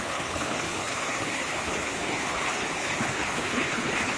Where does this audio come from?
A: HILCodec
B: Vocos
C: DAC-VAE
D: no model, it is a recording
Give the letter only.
A